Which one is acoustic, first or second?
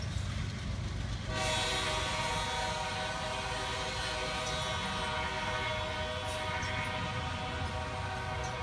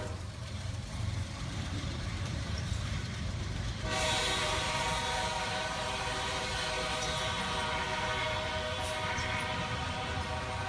first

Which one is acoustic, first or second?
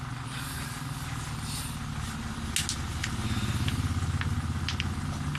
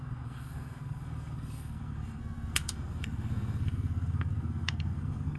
first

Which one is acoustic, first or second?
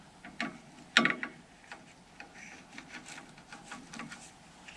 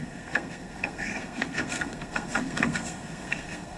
first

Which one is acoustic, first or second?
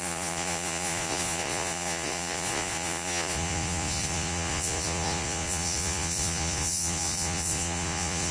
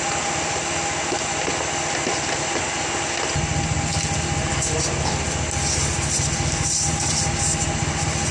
second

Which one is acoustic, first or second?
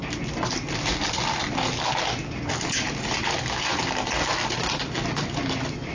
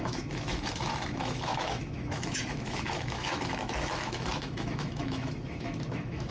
first